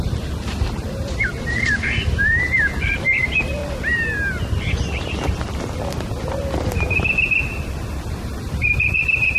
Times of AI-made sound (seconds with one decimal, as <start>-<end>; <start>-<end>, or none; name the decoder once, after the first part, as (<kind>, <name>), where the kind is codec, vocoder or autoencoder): 0.0-3.6 (vocoder, BigVGAN v2); 8.1-9.4